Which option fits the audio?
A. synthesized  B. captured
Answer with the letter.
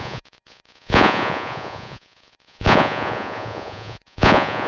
A